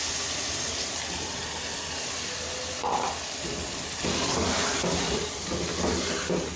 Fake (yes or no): no